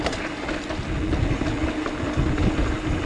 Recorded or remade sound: recorded